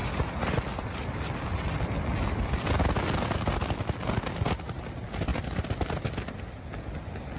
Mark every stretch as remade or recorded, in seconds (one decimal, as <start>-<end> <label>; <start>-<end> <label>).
0.0-7.4 recorded